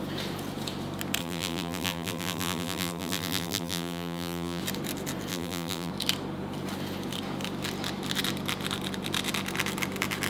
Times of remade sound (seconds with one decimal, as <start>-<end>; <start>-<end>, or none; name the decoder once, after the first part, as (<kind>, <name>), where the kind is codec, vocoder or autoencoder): 1.2-4.6 (vocoder, BigVGAN v2); 5.3-5.9